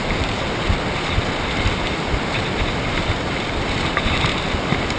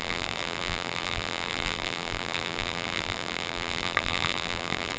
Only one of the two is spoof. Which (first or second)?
second